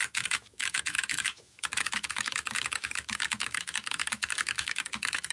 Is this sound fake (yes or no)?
yes